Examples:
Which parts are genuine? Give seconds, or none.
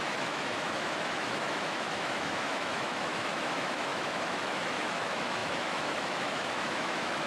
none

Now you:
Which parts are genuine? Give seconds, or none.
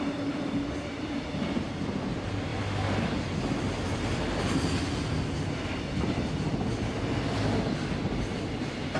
0.0-9.0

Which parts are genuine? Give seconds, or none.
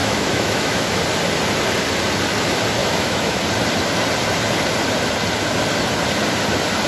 1.0-2.8; 3.4-6.9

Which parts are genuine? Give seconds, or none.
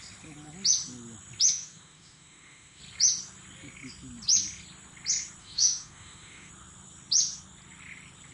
0.0-1.5; 2.8-5.4; 6.5-8.3